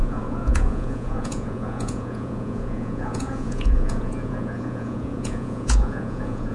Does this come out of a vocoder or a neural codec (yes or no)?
yes